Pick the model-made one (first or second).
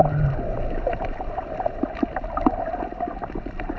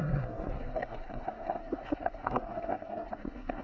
second